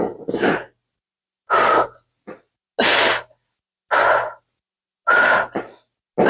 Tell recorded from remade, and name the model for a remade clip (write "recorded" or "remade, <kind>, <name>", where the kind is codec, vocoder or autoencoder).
recorded